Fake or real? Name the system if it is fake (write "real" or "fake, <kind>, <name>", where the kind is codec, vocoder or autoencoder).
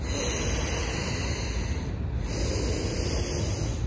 real